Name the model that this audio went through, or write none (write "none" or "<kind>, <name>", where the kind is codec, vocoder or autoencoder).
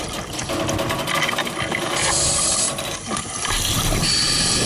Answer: none